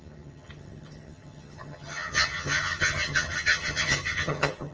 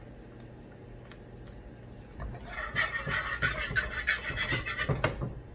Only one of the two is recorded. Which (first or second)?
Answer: second